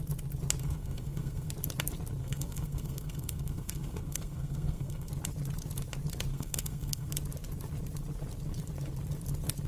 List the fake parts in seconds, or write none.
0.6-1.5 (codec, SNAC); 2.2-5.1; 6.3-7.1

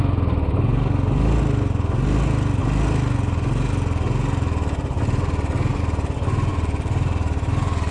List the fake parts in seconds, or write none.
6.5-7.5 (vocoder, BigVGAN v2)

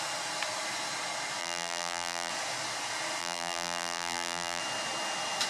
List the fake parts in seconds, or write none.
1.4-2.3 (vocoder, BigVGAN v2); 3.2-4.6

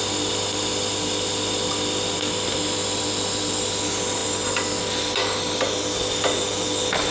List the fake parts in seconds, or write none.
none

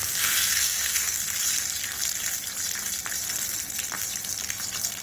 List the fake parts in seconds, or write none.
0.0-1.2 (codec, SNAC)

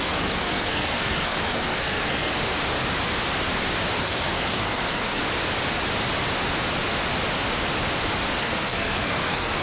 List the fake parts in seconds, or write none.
0.0-2.3 (codec, SNAC); 4.0-5.2; 8.4-9.6